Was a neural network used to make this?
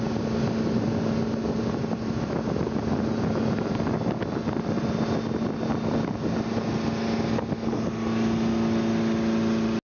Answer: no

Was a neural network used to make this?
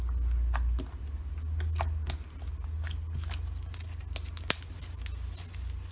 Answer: no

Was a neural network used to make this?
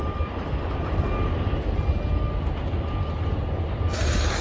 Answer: no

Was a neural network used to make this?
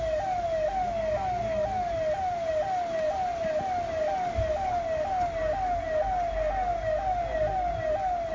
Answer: no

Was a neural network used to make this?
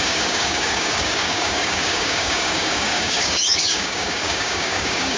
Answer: yes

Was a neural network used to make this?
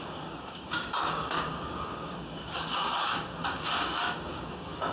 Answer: yes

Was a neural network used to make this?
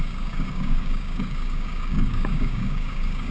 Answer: yes